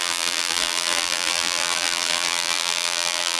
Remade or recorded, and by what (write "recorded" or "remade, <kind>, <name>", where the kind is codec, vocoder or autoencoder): remade, vocoder, BigVGAN v2